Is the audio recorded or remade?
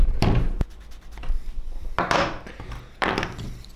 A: remade